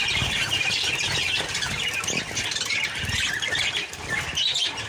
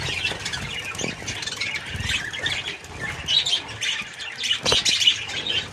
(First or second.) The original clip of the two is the second